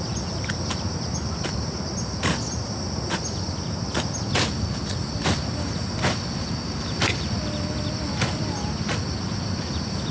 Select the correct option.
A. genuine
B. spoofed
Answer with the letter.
A